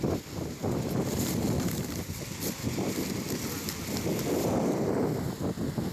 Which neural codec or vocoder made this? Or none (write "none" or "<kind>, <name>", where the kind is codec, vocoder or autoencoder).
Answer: none